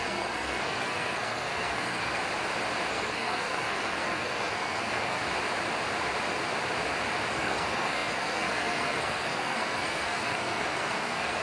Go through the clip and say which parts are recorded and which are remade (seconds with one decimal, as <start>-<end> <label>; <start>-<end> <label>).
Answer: 0.0-2.2 remade; 2.2-2.9 recorded; 2.9-5.2 remade; 5.2-7.3 recorded; 7.3-11.4 remade